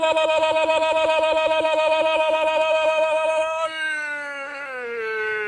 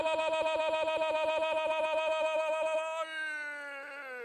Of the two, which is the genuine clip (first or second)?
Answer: second